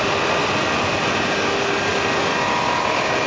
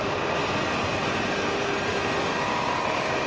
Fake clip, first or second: second